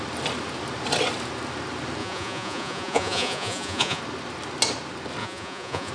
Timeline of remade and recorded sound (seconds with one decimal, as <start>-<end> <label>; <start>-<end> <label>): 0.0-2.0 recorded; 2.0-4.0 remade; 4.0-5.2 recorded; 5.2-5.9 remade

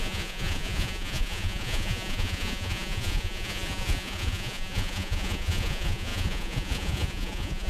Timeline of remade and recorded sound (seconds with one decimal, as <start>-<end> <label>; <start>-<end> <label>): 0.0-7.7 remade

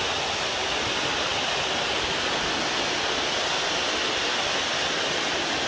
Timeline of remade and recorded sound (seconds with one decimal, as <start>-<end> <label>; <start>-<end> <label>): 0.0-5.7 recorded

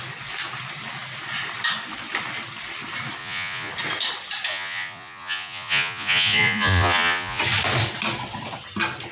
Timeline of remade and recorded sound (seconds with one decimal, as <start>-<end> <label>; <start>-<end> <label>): 0.0-3.2 recorded; 3.2-3.7 remade; 3.7-4.5 recorded; 4.5-7.4 remade; 7.4-9.1 recorded